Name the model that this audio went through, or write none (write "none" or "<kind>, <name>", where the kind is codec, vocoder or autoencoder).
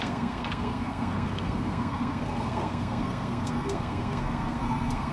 codec, SNAC